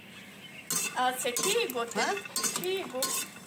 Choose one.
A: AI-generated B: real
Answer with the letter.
B